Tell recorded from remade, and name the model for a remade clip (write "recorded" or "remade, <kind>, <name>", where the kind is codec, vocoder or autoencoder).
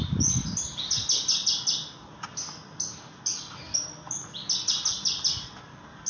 recorded